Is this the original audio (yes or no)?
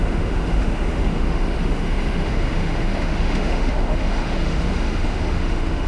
no